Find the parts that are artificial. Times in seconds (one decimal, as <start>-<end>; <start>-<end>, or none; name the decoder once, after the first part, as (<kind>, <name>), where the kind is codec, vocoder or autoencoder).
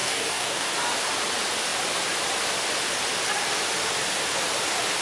0.0-0.7 (codec, DAC)